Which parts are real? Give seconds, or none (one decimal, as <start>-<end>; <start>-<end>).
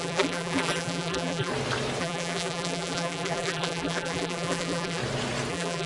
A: 1.5-2.0; 5.0-5.5